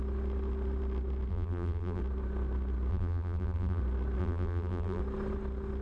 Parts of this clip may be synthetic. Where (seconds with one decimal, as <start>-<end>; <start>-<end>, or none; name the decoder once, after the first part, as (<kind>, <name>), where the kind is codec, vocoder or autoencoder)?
1.3-2.0 (vocoder, BigVGAN v2); 2.9-3.8; 4.2-5.0